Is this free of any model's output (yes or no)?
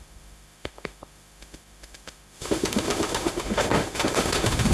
no